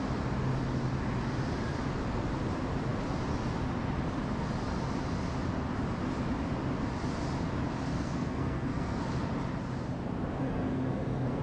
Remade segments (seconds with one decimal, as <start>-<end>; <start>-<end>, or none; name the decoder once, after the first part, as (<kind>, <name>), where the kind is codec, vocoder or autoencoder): 7.9-9.0 (codec, SNAC); 10.4-11.4